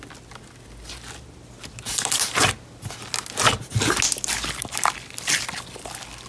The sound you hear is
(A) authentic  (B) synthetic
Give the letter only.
A